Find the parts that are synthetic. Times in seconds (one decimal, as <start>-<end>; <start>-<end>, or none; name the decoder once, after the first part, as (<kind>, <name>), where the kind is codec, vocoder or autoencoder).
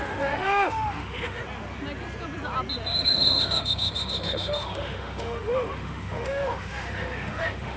0.0-1.4 (autoencoder, DAC-VAE); 2.9-7.8